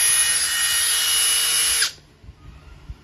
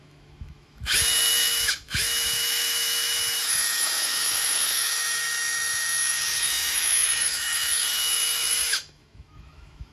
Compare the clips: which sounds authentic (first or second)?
first